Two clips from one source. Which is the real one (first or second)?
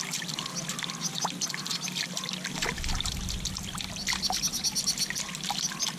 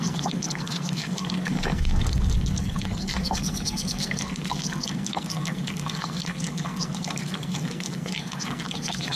first